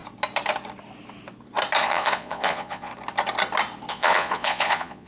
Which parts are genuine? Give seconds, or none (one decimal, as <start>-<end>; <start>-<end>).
0.0-1.8; 2.9-3.9